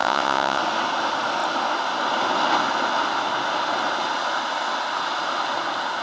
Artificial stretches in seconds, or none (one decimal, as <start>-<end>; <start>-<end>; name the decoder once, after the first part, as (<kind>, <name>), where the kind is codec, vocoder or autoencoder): 0.0-0.6 (vocoder, WaveNeXt)